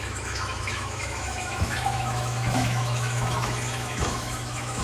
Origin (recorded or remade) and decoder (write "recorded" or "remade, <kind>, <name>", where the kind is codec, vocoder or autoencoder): remade, autoencoder, DAC-VAE